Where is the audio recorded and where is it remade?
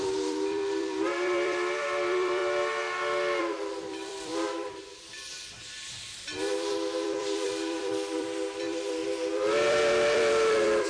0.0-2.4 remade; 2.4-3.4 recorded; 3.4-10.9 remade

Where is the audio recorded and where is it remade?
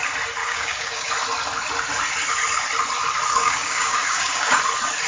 0.0-0.4 recorded; 0.4-1.1 remade; 1.1-3.4 recorded; 3.4-4.6 remade; 4.6-5.1 recorded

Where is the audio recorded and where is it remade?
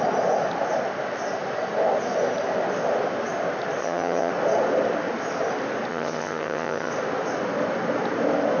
0.0-3.8 recorded; 3.8-4.3 remade; 4.3-5.9 recorded; 5.9-6.9 remade; 6.9-8.6 recorded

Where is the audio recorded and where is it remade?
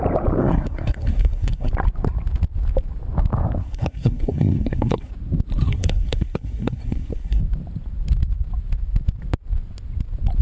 0.0-0.4 recorded; 0.4-1.7 remade; 1.7-3.6 recorded; 3.6-5.1 remade; 5.1-5.6 recorded; 5.6-7.4 remade; 7.4-10.4 recorded